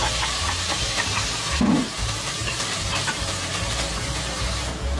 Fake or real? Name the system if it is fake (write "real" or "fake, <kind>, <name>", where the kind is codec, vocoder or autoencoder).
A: fake, vocoder, BigVGAN v2